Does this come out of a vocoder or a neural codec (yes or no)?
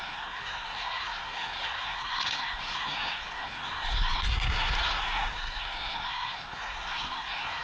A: yes